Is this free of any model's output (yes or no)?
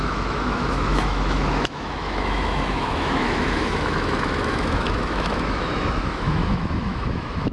no